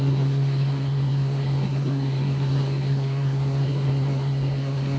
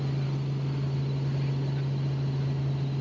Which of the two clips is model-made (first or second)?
first